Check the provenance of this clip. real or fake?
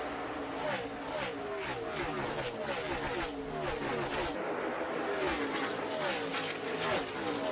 real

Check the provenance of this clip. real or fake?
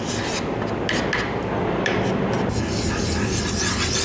real